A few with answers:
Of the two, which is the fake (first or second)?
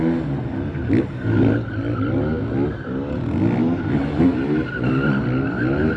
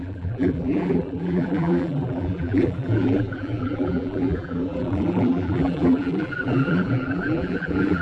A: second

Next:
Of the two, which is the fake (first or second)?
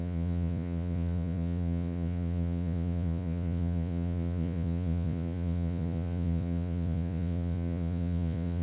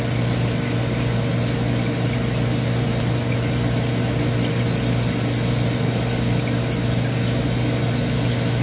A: first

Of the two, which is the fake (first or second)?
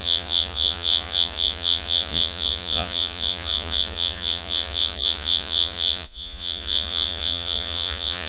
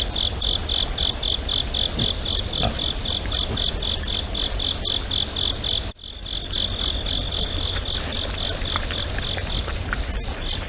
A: first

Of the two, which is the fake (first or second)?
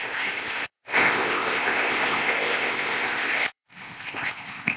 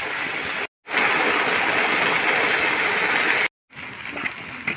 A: first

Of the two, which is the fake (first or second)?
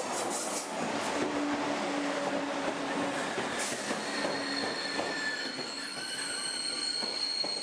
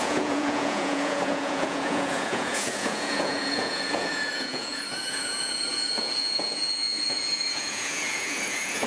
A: second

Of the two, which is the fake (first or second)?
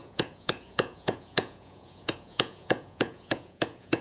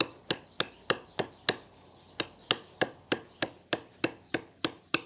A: first